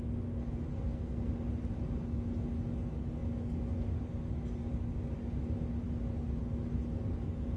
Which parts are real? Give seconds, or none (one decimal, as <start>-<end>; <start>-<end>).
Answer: 0.0-0.7; 1.3-7.6